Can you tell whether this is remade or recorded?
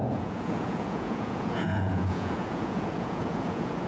remade